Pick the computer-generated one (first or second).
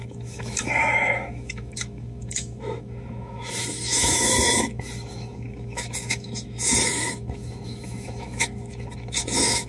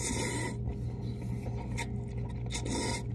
first